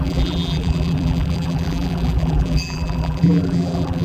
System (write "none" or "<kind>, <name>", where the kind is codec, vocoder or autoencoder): vocoder, BigVGAN v2